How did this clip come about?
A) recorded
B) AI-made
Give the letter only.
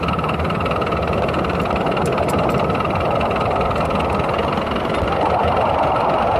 A